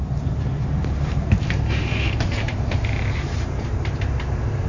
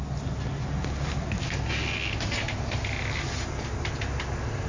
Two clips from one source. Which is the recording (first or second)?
second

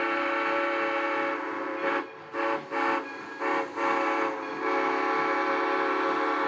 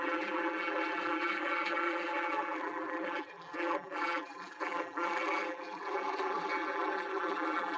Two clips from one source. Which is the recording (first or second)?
first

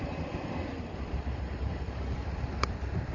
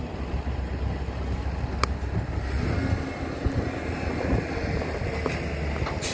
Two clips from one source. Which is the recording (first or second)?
second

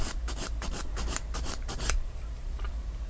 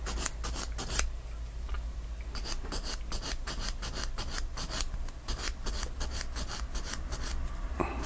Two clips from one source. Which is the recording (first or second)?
second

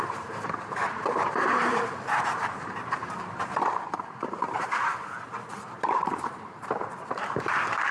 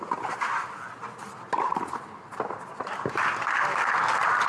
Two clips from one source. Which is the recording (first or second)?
second